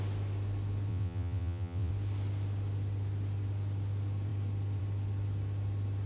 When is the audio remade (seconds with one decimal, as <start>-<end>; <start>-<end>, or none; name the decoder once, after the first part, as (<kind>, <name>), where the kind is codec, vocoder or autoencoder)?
0.9-1.9 (vocoder, WaveNeXt)